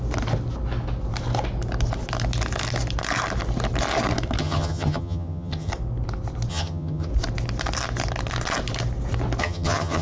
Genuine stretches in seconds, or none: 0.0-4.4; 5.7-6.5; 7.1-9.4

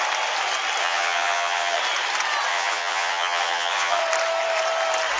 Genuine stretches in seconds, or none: 0.0-0.8; 1.8-2.5; 4.0-5.2

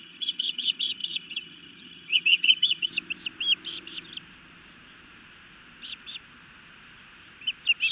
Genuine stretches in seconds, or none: 2.9-7.9

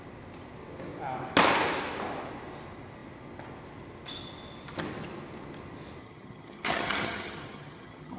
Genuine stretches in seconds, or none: 0.0-6.0

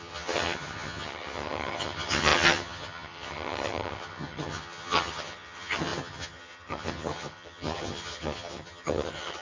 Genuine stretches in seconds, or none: none

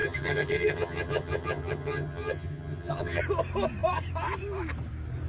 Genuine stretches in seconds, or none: 3.2-5.3